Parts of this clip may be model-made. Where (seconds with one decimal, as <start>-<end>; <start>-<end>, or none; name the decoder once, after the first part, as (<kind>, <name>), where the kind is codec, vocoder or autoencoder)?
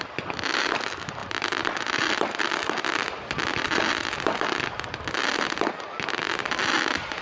none